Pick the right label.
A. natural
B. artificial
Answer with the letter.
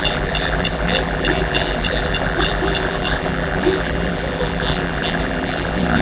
B